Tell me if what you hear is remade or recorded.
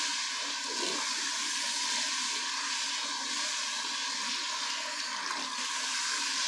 recorded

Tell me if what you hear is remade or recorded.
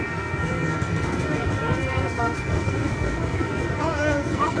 remade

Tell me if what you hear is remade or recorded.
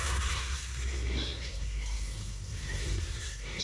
remade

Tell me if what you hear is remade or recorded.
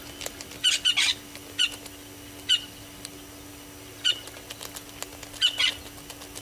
recorded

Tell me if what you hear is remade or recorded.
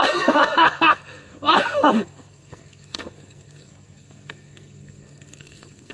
remade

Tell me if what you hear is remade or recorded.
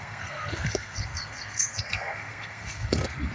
remade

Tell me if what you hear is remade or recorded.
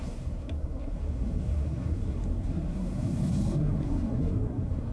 remade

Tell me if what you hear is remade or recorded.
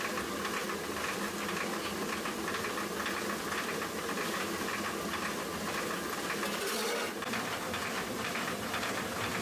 recorded